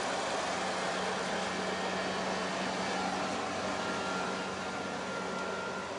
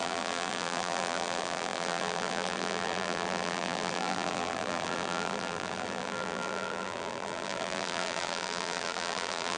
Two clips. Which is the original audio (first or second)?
first